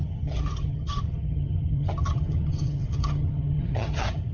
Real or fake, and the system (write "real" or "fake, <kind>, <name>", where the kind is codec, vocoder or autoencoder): fake, vocoder, HiFi-GAN